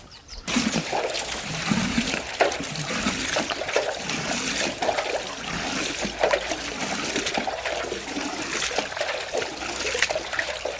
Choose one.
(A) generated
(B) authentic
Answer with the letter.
B